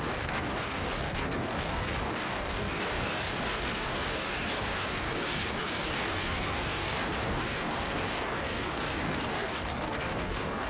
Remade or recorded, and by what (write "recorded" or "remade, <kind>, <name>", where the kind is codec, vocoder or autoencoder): remade, codec, DAC